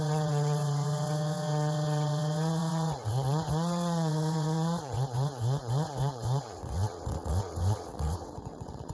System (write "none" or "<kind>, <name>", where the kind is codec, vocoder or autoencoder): vocoder, WaveNeXt